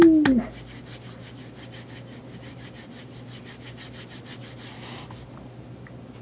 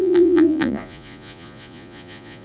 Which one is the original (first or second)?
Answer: first